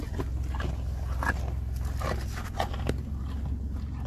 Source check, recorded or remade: recorded